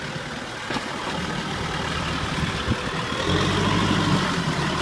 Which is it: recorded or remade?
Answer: recorded